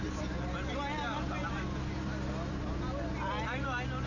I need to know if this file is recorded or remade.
recorded